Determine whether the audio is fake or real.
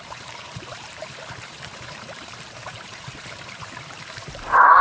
fake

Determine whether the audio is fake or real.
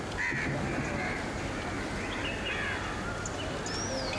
real